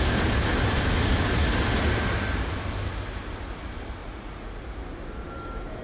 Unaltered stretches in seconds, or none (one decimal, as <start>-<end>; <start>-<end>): 0.0-4.0; 4.5-5.8